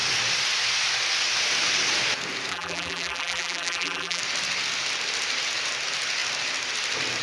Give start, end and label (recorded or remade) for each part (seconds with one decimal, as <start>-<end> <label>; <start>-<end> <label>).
0.0-2.5 recorded; 2.5-4.2 remade; 4.2-7.2 recorded